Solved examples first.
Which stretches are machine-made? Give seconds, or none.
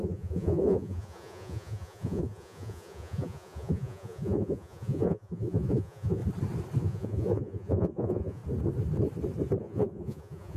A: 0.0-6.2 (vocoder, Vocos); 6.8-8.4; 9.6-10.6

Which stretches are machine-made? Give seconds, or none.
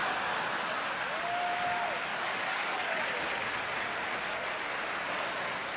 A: 2.1-3.1 (codec, DAC)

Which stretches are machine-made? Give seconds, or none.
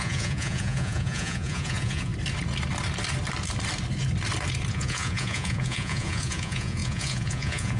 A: 0.0-2.1 (vocoder, Vocos); 4.7-7.8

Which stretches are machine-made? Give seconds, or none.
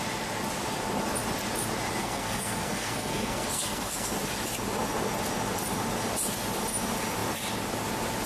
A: 2.0-4.1 (codec, SNAC)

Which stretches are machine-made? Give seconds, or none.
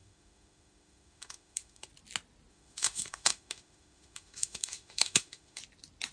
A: 0.0-1.9 (autoencoder, DAC-VAE); 2.5-5.6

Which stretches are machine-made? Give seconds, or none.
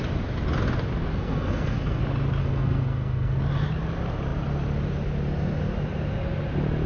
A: 1.1-2.0 (codec, SNAC); 2.4-3.4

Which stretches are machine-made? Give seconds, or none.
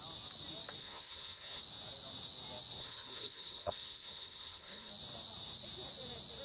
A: 0.8-1.6 (codec, HILCodec); 2.8-4.9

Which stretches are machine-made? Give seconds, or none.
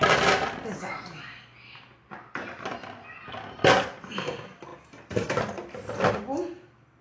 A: none